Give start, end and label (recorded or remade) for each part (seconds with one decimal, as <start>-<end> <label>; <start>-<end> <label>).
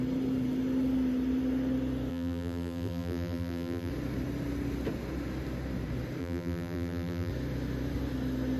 0.0-2.1 recorded; 2.1-3.9 remade; 3.9-6.2 recorded; 6.2-7.3 remade; 7.3-8.6 recorded